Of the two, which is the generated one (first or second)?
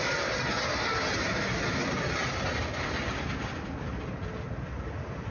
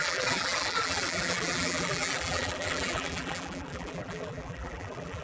second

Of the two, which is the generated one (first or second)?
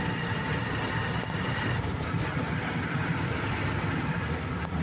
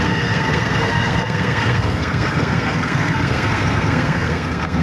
second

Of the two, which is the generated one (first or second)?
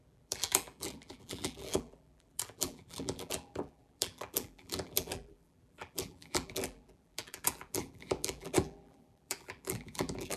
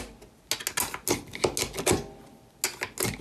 first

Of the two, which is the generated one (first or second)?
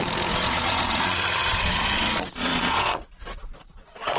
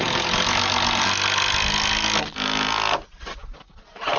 first